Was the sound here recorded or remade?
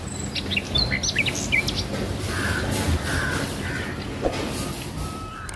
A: recorded